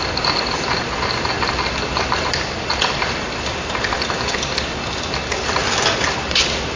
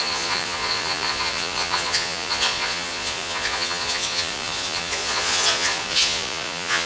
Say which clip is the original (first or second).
first